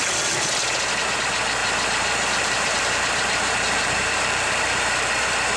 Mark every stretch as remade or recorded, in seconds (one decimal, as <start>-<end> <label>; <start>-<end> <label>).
0.0-1.6 recorded; 1.6-5.0 remade; 5.0-5.6 recorded